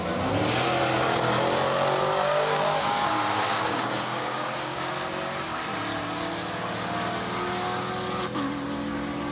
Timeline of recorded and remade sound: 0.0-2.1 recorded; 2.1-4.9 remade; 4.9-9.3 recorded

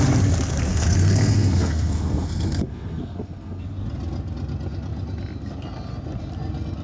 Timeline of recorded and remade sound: 0.0-0.7 recorded; 0.7-3.6 remade; 3.6-6.8 recorded

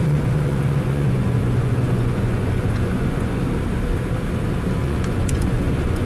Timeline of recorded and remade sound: 0.0-3.4 remade; 3.4-4.8 recorded; 4.8-6.1 remade